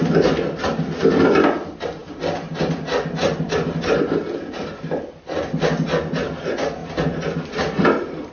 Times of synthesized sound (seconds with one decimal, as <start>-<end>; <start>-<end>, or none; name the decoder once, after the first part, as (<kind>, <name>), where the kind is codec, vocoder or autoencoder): 6.8-8.3 (vocoder, BigVGAN v2)